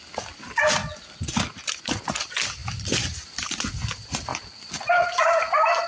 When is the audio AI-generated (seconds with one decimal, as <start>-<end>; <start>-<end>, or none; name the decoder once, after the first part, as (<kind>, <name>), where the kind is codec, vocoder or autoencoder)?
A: none